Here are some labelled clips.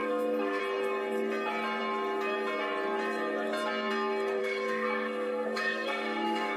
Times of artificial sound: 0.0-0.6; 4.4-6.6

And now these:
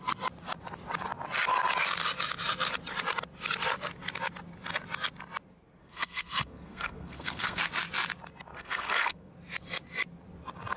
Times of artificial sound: 5.8-7.6; 8.5-9.3

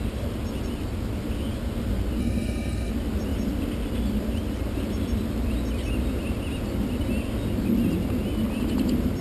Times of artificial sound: 2.2-2.9